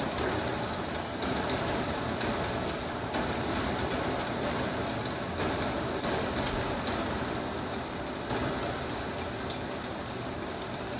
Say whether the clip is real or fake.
real